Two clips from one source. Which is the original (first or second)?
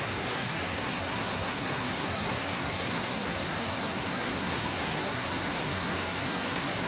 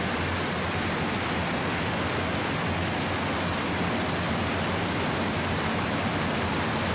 second